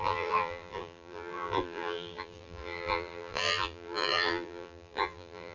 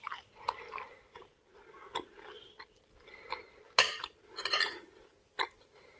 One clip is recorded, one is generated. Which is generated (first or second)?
first